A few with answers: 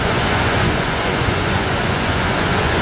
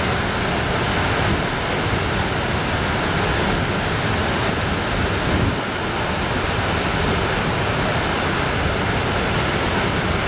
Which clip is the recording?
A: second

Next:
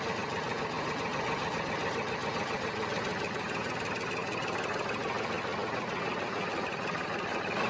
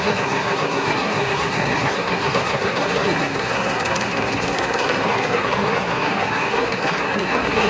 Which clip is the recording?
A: first